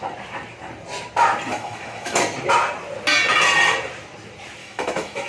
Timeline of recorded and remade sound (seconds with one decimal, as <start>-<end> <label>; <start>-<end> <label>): 0.0-1.5 recorded; 1.5-2.2 remade; 2.2-4.6 recorded; 4.6-5.3 remade

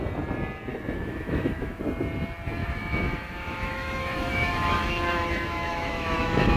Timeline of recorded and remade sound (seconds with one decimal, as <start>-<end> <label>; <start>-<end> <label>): 0.0-0.7 recorded; 0.7-1.8 remade; 1.8-2.6 recorded; 2.6-6.6 remade

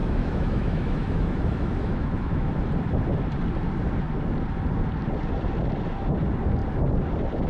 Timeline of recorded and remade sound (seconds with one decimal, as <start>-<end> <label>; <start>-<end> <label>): 0.0-2.5 remade; 2.5-7.5 recorded